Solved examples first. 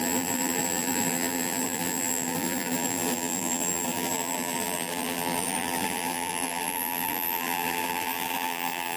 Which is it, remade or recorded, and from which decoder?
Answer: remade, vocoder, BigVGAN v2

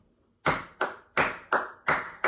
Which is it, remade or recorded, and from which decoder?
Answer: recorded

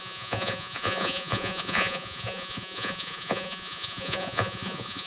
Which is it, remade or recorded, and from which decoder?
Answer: remade, vocoder, Vocos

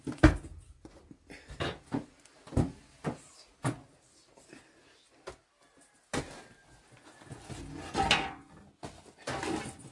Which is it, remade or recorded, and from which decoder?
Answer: recorded